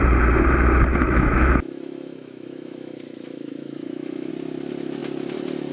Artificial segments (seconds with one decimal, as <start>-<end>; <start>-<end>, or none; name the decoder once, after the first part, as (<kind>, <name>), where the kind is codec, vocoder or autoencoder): 0.9-4.3 (autoencoder, DAC-VAE)